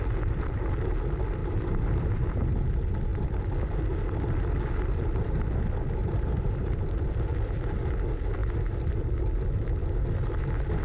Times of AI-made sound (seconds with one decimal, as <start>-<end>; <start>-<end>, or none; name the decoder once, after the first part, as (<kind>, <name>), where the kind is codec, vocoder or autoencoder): 1.4-2.4 (vocoder, BigVGAN v2); 6.0-6.7

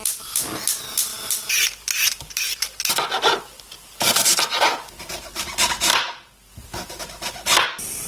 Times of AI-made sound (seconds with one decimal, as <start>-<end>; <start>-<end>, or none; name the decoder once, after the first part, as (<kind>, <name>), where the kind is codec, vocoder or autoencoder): 1.1-5.4 (vocoder, BigVGAN v2); 5.9-7.0

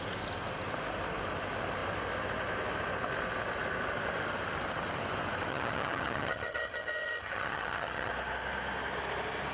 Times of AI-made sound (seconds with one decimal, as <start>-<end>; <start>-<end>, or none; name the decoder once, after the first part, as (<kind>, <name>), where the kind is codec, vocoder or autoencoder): 5.5-8.1 (vocoder, HiFi-GAN)

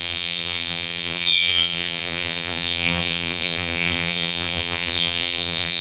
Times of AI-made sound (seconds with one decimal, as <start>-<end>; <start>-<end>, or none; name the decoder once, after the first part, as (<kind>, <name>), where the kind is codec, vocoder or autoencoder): 0.0-5.8 (vocoder, BigVGAN v2)

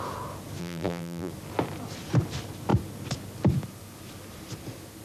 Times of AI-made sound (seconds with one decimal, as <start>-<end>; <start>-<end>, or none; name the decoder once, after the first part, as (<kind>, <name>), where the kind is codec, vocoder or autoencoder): 0.6-1.3 (vocoder, BigVGAN v2)

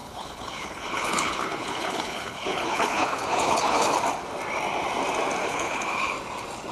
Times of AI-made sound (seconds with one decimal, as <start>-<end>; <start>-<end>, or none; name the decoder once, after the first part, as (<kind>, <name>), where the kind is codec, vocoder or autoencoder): 0.0-4.0 (codec, HILCodec); 5.4-6.1

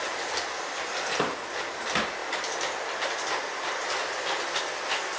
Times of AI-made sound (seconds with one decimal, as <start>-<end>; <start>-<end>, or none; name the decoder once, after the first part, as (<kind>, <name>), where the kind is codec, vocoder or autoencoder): none